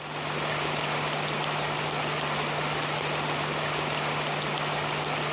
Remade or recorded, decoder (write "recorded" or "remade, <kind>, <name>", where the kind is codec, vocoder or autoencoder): recorded